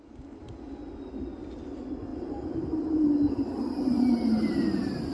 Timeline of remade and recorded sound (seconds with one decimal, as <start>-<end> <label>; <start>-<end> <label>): 0.0-2.1 recorded; 2.1-4.5 remade; 4.5-5.1 recorded